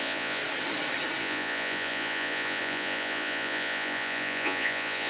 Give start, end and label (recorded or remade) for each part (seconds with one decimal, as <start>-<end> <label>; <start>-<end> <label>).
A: 0.0-0.4 remade; 0.4-1.2 recorded; 1.2-5.1 remade